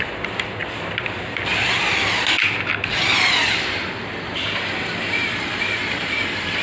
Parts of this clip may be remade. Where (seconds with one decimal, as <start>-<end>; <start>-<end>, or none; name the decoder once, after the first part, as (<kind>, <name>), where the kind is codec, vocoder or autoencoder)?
none